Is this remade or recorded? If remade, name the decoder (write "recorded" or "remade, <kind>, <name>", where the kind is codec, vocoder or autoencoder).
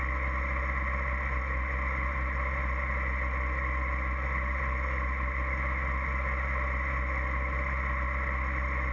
recorded